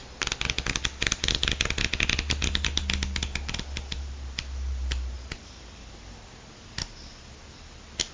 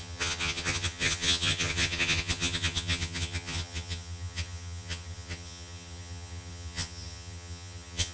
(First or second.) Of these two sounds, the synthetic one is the second